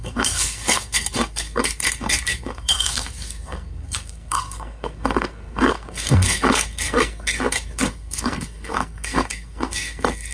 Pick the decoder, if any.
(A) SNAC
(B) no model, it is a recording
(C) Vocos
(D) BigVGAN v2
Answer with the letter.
A